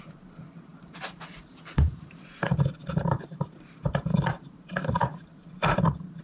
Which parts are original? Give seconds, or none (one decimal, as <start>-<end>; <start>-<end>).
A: 2.8-3.3